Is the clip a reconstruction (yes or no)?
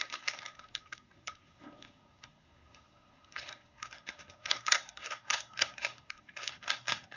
yes